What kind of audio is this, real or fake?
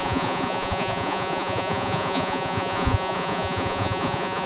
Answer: fake